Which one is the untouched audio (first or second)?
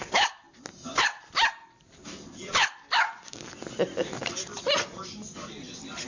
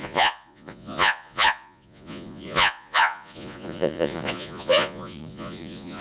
first